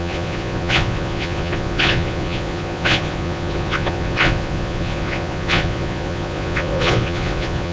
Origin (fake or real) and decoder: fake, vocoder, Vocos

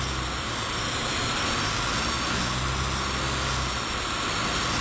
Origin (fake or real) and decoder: real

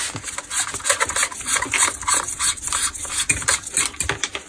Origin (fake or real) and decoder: real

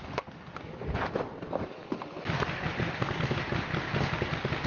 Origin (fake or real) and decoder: real